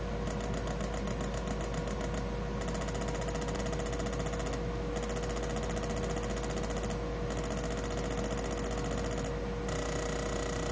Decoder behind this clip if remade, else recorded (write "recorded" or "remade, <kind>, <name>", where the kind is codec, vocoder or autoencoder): recorded